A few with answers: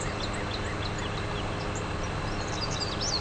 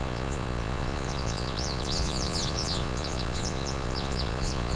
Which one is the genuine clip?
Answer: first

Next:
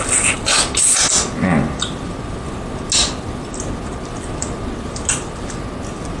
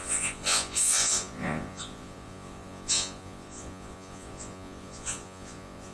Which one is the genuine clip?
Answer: first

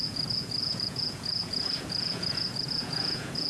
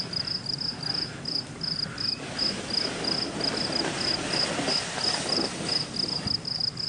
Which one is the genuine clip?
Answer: second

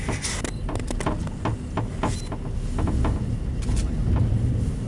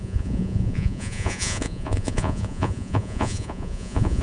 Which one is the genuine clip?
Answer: first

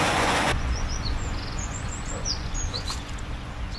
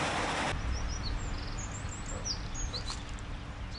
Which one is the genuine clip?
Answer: second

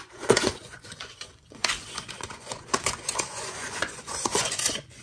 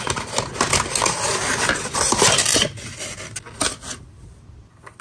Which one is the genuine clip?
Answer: second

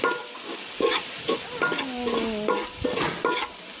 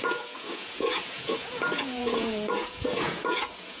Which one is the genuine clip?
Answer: first